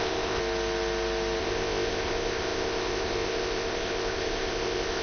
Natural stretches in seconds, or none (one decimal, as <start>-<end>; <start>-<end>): 0.4-1.4